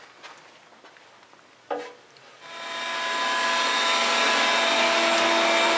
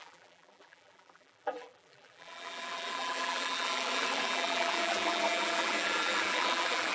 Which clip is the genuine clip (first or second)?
first